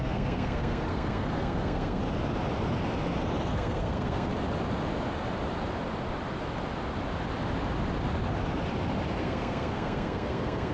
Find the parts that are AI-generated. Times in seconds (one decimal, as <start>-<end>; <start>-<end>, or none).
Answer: 0.0-2.0; 3.5-4.3; 9.2-10.7